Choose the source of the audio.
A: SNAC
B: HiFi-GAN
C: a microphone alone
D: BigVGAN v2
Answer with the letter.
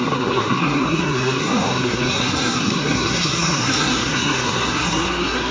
A